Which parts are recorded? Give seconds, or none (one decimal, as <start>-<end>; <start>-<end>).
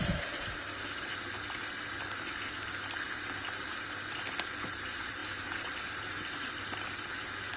0.0-5.2; 6.6-7.6